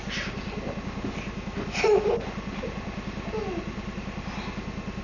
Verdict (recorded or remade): recorded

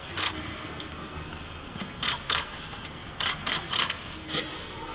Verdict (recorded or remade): remade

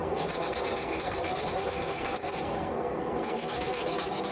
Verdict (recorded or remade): remade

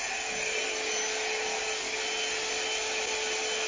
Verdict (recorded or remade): recorded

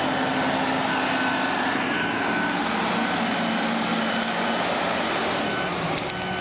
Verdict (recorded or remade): recorded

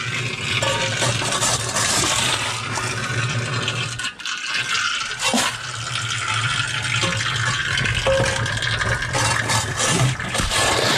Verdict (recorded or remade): recorded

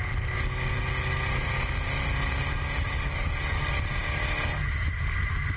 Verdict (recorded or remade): recorded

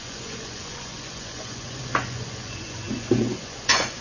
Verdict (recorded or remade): remade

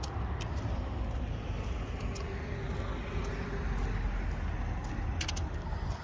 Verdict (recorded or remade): recorded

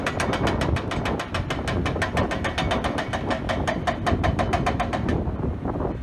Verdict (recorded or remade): recorded